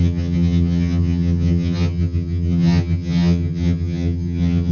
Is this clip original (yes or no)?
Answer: no